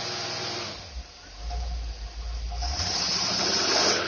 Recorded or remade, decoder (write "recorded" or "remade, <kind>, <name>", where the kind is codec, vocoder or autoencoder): recorded